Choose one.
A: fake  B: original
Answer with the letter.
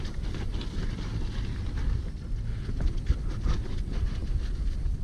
B